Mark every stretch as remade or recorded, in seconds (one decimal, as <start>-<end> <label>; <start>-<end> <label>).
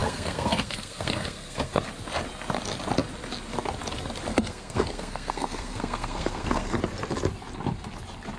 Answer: 0.0-1.9 remade; 1.9-4.3 recorded; 4.3-6.8 remade; 6.8-8.4 recorded